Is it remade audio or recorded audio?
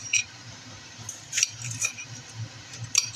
remade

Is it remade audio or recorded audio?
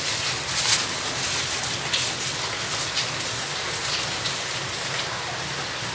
recorded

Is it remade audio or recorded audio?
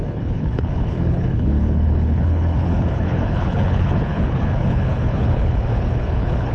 remade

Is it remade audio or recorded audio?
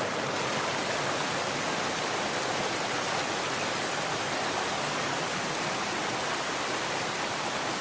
recorded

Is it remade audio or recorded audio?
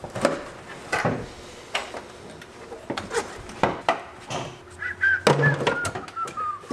recorded